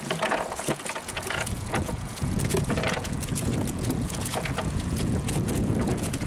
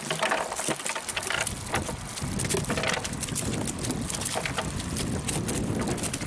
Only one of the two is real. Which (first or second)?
second